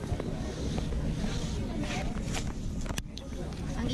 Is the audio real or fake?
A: real